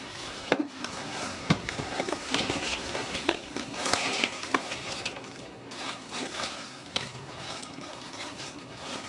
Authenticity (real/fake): fake